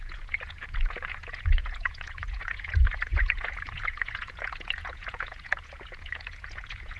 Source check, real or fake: fake